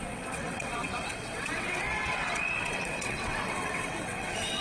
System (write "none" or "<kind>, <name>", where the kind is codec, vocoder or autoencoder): vocoder, WaveNeXt